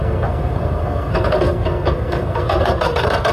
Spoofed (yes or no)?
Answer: yes